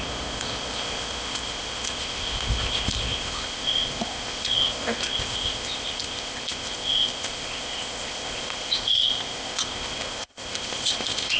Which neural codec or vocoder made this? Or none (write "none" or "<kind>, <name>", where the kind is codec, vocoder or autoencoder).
codec, ZipCodec